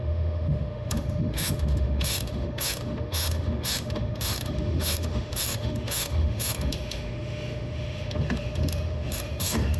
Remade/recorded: remade